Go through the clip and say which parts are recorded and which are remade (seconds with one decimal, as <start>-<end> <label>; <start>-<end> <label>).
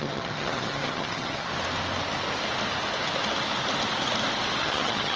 0.0-1.5 remade; 1.5-4.6 recorded; 4.6-5.2 remade